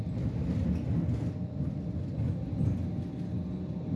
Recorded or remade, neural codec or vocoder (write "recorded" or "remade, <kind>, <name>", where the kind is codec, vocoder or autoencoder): recorded